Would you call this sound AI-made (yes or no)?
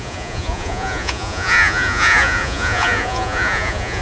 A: yes